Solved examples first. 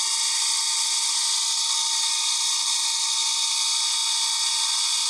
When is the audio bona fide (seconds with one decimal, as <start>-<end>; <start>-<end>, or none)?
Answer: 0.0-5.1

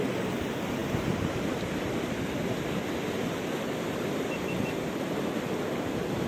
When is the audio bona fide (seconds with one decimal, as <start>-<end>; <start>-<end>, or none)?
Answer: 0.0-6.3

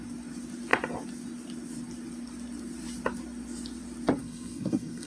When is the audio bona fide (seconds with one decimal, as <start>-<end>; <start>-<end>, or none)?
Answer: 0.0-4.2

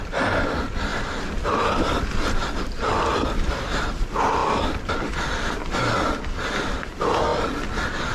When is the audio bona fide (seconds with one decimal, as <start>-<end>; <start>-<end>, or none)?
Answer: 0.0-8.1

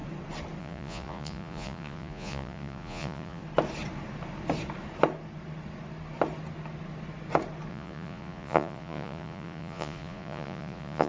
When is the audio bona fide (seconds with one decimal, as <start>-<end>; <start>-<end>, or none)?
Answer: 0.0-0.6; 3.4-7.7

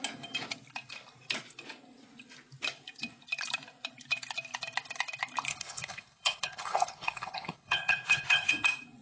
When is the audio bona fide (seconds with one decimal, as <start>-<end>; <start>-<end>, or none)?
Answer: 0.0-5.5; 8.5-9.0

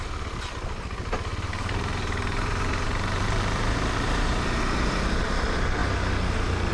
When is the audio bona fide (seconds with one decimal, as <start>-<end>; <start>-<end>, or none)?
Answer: 0.0-1.3; 5.3-6.7

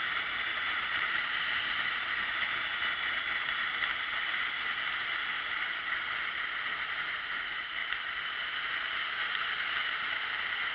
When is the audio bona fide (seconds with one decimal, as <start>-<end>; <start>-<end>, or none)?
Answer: 0.0-0.5; 1.4-10.7